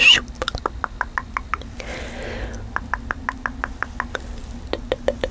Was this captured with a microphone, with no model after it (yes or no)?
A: yes